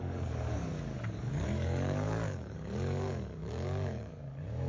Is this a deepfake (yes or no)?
yes